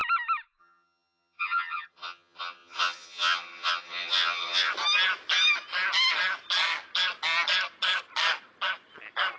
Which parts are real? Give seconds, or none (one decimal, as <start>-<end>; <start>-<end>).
0.0-0.6; 4.7-9.4